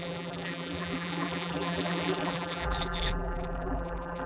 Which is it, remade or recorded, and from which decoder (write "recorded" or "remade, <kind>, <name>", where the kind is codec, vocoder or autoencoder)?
remade, vocoder, BigVGAN v2